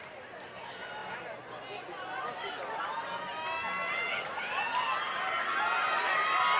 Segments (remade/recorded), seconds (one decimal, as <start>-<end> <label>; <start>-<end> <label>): 0.0-6.6 recorded